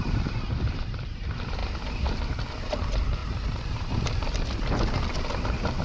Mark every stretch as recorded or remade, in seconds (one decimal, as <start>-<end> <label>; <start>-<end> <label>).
0.0-3.2 recorded; 3.2-3.9 remade; 3.9-5.8 recorded